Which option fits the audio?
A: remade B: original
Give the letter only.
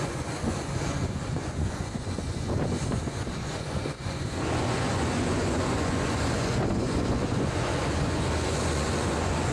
A